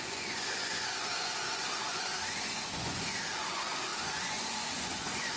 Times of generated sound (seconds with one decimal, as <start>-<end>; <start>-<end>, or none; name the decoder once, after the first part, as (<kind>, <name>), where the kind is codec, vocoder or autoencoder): 0.0-5.4 (vocoder, Vocos)